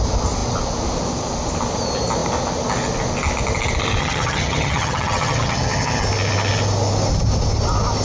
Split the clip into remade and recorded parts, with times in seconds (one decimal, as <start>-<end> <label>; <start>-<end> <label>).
0.0-4.0 recorded; 4.0-6.0 remade; 6.0-8.0 recorded